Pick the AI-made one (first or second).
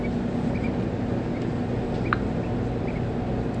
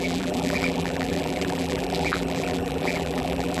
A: second